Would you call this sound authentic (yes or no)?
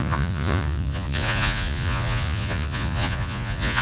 no